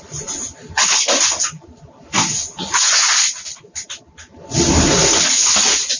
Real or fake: real